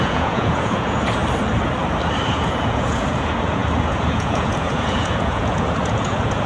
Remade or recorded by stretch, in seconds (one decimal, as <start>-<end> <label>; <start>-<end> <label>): 0.0-1.2 remade; 1.2-2.3 recorded; 2.3-6.5 remade

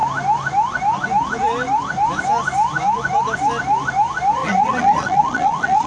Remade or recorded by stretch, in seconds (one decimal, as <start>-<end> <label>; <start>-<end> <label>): 0.0-4.4 recorded; 4.4-5.9 remade

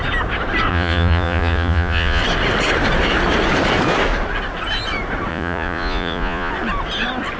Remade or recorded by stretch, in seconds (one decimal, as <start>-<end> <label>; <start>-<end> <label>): 0.0-0.7 recorded; 0.7-2.2 remade; 2.2-5.3 recorded; 5.3-6.5 remade; 6.5-7.4 recorded